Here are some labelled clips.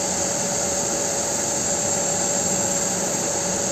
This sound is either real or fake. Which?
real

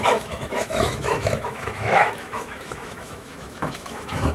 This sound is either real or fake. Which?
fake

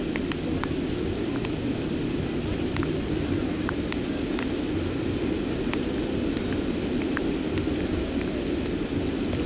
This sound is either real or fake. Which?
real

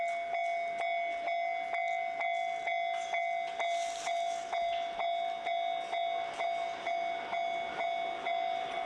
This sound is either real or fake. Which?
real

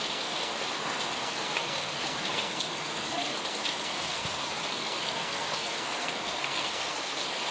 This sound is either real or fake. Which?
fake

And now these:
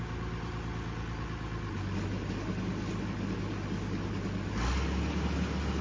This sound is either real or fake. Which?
real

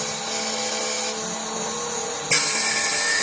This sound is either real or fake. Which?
real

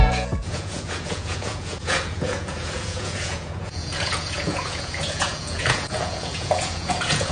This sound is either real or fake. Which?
fake